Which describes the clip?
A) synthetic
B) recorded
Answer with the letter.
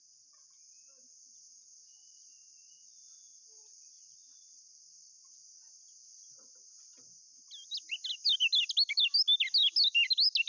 B